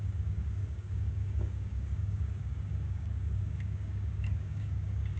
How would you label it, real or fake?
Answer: fake